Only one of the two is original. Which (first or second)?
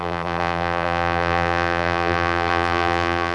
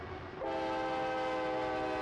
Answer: second